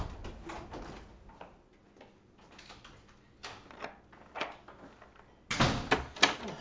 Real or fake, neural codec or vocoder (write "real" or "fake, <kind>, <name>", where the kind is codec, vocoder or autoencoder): real